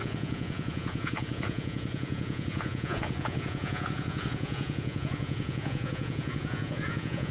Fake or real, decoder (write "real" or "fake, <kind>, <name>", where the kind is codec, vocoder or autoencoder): fake, vocoder, Vocos